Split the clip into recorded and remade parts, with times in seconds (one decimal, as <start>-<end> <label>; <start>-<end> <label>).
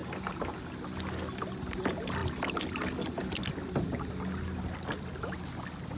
0.0-6.0 recorded